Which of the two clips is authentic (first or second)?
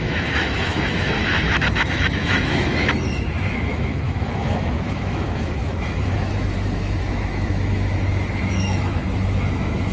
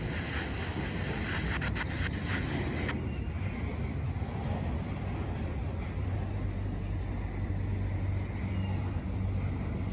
second